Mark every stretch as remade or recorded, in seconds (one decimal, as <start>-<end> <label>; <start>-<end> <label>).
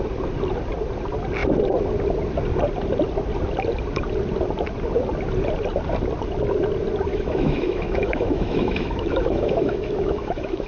0.0-7.1 recorded; 7.1-10.7 remade